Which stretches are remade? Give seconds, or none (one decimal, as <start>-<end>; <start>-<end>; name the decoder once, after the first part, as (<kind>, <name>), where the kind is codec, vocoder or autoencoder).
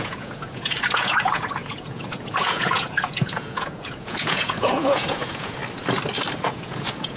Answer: 0.0-5.6 (vocoder, Vocos); 6.4-7.2